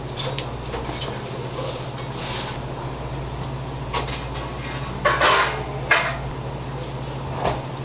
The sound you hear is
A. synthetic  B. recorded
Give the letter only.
B